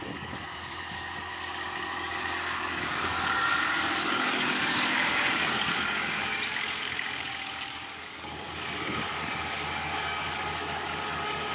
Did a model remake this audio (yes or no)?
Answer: yes